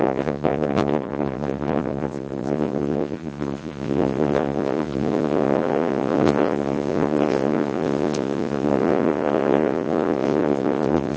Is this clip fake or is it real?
fake